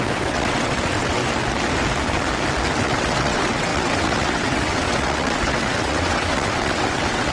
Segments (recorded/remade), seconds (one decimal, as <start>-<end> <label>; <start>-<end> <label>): 0.0-1.2 remade; 1.2-2.8 recorded; 2.8-7.3 remade